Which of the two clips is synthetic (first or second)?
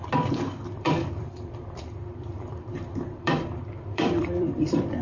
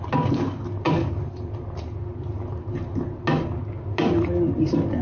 first